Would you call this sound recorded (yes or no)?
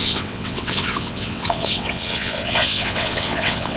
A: no